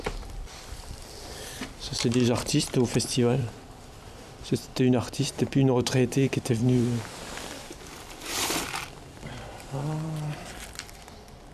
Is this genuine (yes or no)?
no